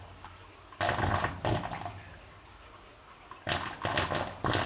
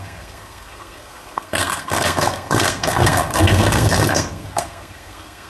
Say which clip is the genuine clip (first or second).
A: first